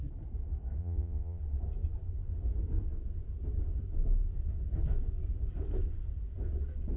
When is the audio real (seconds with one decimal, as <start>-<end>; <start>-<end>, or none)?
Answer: 0.0-0.8; 1.4-7.0